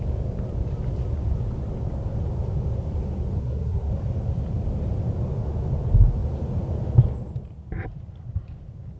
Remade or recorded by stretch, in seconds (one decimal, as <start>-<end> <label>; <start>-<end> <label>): 0.0-3.4 recorded; 3.4-3.9 remade; 3.9-9.0 recorded